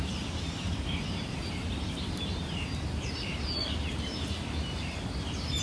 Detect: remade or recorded remade